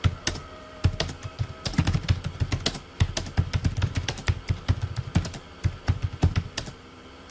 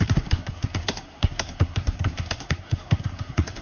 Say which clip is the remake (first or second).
second